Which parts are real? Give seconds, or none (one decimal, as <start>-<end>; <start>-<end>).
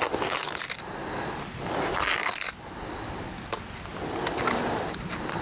0.0-5.4